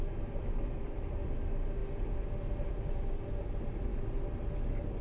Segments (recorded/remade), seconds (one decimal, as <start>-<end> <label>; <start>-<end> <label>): 0.0-5.0 recorded